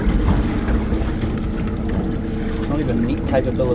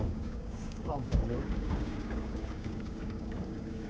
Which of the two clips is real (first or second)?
first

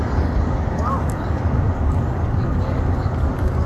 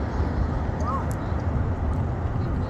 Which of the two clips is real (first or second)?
second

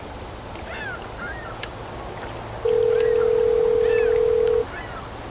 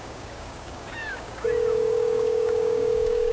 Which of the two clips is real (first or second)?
first